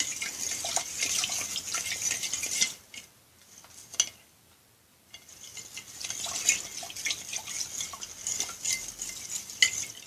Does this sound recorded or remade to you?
recorded